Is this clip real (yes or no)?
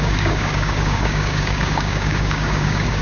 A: no